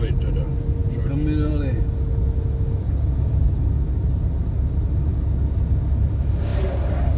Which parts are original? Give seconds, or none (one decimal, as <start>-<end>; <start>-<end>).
0.0-7.2